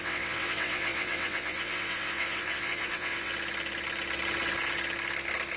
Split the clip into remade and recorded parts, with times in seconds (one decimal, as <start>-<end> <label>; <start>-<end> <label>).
0.0-3.3 remade; 3.3-5.6 recorded

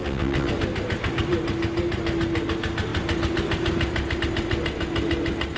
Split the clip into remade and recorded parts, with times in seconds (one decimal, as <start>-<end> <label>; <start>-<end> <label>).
0.0-0.5 remade; 0.5-5.6 recorded

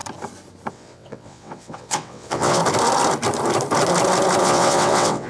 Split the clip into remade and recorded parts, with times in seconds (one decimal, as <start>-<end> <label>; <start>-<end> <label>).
0.0-0.7 recorded; 0.7-2.6 remade; 2.6-4.4 recorded; 4.4-5.3 remade

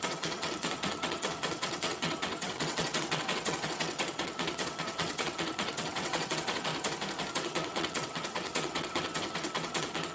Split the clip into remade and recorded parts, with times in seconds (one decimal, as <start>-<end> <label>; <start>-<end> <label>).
0.0-6.7 remade; 6.7-7.3 recorded; 7.3-10.1 remade

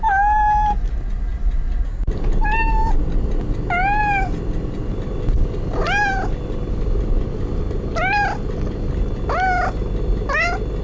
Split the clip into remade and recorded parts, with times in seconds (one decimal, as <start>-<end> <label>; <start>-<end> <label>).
0.0-10.8 recorded

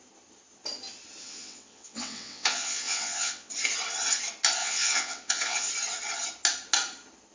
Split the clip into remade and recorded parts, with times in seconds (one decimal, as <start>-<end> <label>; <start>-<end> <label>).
0.0-1.2 recorded; 1.2-3.5 remade; 3.5-4.6 recorded; 4.6-5.7 remade; 5.7-7.3 recorded

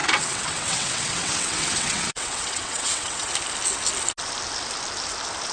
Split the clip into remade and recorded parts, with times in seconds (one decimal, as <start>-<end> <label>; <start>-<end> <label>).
0.0-3.3 remade; 3.3-5.5 recorded

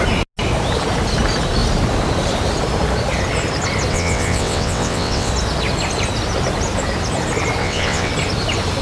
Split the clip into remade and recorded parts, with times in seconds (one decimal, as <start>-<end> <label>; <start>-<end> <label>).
0.0-3.9 recorded; 3.9-5.3 remade; 5.3-7.6 recorded; 7.6-8.1 remade; 8.1-8.8 recorded